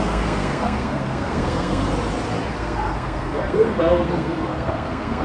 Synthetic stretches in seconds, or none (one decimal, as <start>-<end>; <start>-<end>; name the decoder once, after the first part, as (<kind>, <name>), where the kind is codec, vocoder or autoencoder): 0.0-1.8 (codec, SNAC); 2.5-5.2